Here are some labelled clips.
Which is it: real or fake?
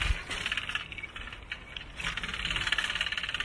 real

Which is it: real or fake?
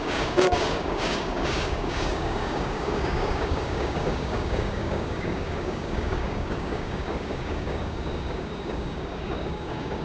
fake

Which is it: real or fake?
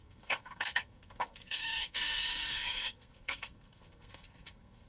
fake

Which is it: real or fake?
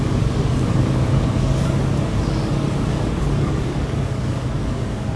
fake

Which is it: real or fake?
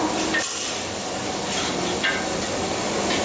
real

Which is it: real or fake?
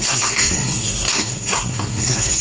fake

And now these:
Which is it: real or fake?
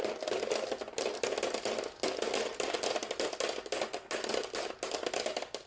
real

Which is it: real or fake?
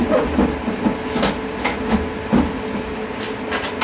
real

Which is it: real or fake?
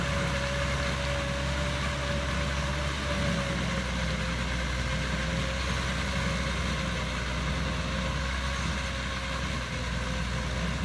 real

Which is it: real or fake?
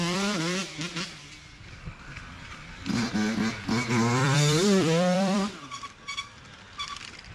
fake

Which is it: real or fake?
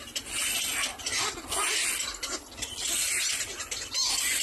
real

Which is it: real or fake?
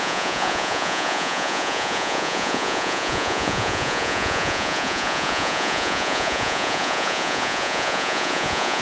fake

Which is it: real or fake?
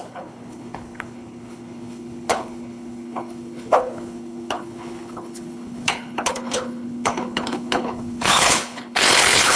fake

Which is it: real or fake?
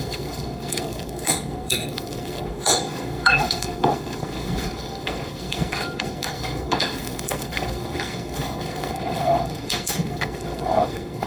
fake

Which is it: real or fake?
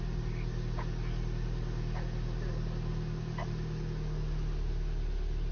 real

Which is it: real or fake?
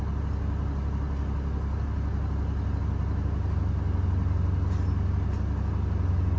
real